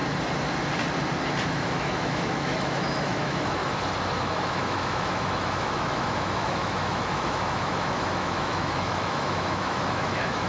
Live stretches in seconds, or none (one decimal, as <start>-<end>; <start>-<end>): 0.0-1.5; 3.6-4.2

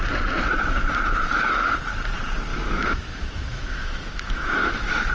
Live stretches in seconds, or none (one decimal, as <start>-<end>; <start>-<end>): 0.0-2.5

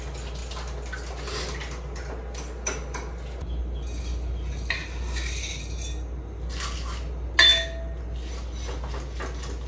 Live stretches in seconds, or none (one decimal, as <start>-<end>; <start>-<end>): 0.0-9.7

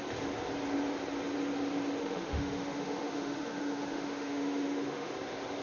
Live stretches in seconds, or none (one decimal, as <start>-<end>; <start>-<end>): 0.0-2.0; 5.1-5.6

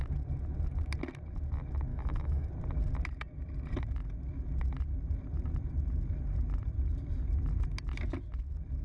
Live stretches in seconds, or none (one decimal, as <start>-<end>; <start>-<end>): 0.0-1.9; 2.5-8.8